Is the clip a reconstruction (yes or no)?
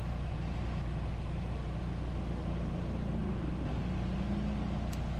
no